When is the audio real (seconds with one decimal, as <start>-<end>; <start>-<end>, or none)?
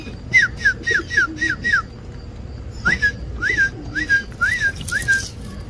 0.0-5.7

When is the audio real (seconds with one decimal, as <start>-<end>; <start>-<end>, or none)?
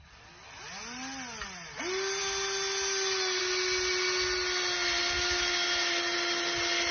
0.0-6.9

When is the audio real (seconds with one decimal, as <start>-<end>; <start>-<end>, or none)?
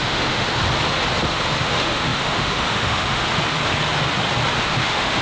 0.6-1.6; 3.2-4.6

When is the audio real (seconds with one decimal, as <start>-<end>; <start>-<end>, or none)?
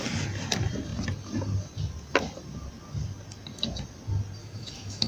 0.0-4.4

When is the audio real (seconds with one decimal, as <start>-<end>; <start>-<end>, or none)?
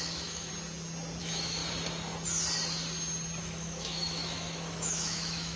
0.5-1.2; 1.6-3.4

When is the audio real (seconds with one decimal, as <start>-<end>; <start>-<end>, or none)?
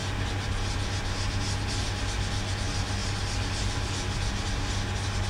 0.0-5.3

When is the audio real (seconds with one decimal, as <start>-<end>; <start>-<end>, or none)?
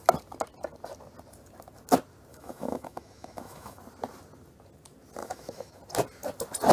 0.0-2.3; 3.8-5.2; 5.8-6.7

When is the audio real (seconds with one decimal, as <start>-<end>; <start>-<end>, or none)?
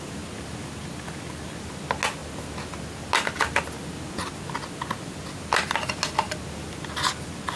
0.0-7.6